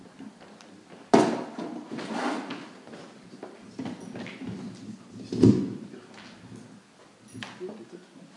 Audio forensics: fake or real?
real